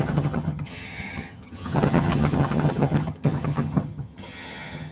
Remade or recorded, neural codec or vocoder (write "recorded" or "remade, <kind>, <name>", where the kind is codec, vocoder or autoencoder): remade, vocoder, HiFi-GAN